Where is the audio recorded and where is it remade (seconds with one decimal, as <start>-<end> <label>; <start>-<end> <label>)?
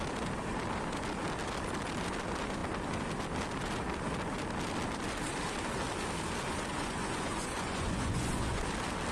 0.0-6.7 recorded; 6.7-8.6 remade; 8.6-9.1 recorded